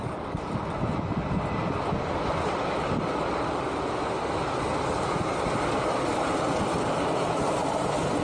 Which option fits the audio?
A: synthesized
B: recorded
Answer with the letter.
B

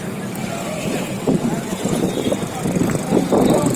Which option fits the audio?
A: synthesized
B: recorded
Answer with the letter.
A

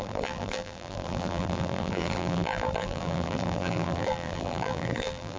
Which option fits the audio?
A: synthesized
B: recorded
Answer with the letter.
A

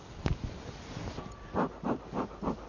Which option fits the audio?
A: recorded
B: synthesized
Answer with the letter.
A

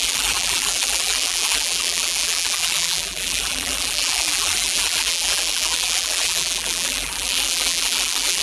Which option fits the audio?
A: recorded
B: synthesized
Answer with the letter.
B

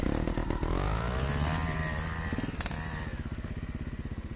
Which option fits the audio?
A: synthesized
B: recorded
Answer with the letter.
B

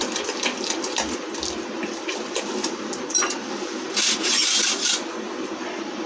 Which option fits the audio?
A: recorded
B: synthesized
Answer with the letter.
B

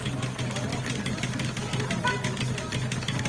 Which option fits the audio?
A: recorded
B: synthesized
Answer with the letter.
A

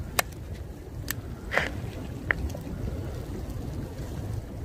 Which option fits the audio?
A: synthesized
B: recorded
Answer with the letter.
B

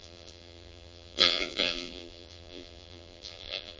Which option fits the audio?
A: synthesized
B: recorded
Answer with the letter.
A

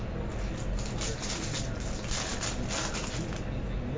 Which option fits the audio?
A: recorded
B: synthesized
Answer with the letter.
A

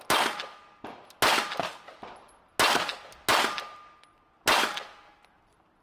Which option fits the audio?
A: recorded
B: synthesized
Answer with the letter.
A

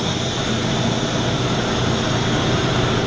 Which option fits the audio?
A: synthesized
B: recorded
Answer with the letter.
B